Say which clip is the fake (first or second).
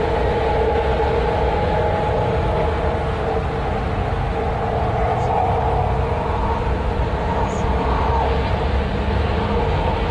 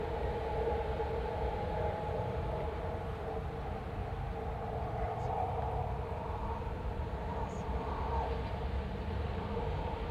second